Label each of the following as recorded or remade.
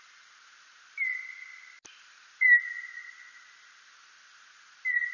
remade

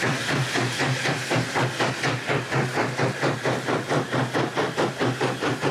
recorded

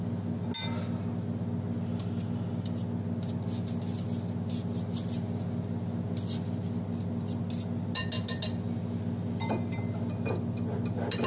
recorded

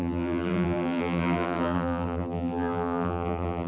remade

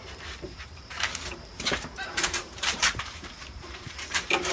remade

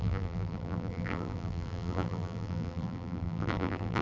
remade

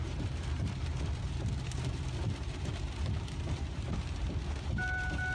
remade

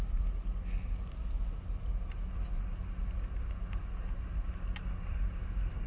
recorded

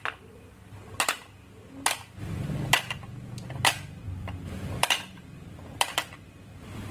remade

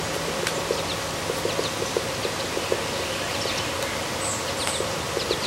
recorded